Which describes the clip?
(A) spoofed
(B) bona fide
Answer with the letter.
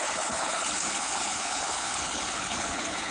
A